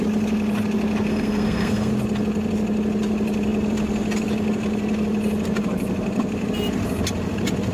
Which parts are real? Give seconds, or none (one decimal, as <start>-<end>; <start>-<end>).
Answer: 0.0-1.1; 1.9-7.7